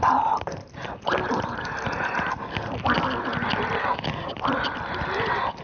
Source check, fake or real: real